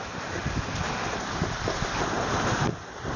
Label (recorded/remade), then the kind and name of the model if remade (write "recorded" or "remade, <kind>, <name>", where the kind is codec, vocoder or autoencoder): recorded